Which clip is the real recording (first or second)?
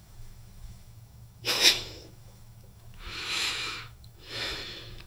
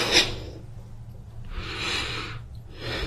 second